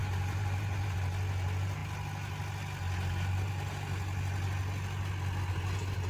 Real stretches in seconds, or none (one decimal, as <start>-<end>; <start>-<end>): 1.0-6.1